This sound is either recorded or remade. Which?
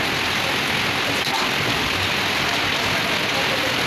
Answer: recorded